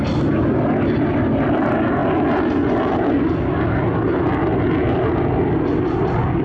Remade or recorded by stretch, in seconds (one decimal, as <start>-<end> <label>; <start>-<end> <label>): 0.0-6.4 recorded